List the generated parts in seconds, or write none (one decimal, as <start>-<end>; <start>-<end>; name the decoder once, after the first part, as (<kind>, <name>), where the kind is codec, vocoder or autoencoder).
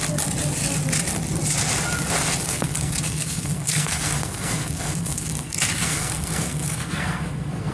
2.5-7.7 (codec, SNAC)